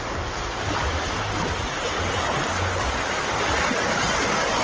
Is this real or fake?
real